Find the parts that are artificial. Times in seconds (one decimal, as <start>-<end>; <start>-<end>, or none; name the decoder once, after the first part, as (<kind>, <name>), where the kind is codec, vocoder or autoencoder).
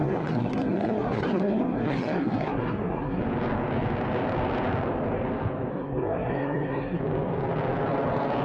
0.0-3.2 (codec, SNAC); 5.7-7.0